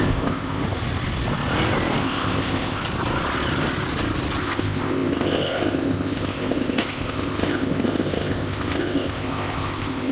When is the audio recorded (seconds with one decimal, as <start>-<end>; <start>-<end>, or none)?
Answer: 0.6-2.0; 2.8-4.4